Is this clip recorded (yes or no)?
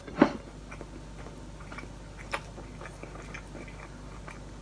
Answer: yes